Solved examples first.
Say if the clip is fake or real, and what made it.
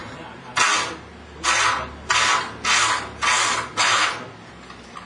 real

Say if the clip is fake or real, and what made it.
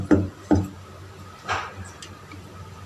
real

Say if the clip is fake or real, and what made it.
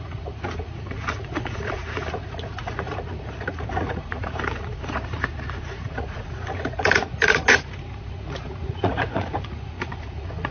fake, vocoder, Vocos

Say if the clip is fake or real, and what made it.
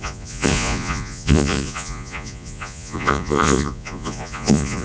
fake, vocoder, Vocos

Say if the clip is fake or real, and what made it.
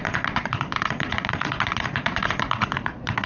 fake, vocoder, Vocos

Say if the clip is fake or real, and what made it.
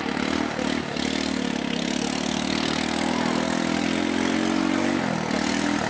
real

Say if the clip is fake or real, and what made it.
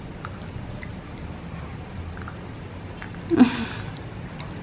real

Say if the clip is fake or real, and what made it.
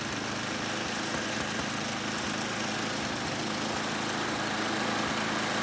real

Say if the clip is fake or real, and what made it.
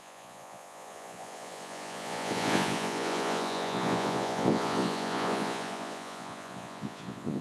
fake, vocoder, Vocos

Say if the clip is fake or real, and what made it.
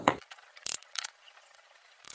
fake, vocoder, Vocos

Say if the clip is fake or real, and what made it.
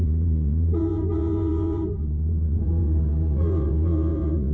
fake, vocoder, Vocos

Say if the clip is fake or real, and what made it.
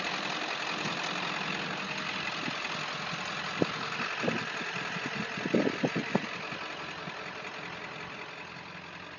real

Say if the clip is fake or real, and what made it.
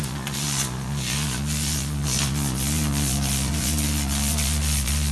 fake, vocoder, Vocos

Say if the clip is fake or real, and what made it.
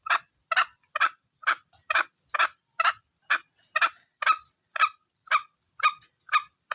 real